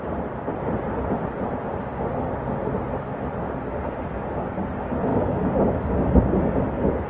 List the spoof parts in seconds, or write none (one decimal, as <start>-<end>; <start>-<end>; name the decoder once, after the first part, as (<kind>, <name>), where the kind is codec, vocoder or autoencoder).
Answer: 5.1-6.3 (codec, DAC)